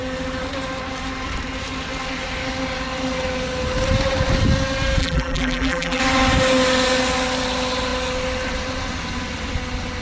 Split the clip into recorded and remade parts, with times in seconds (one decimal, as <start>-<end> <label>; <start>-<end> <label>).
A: 0.0-5.0 recorded; 5.0-6.0 remade; 6.0-10.0 recorded